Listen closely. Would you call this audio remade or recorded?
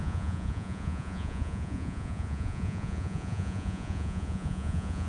remade